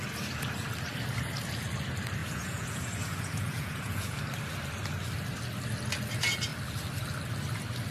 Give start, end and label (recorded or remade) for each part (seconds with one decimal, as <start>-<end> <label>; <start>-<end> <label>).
0.0-2.2 recorded; 2.2-4.2 remade; 4.2-7.9 recorded